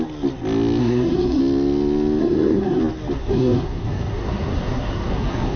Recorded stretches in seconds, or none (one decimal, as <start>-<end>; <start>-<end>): 0.0-0.8; 1.4-2.2; 2.8-3.2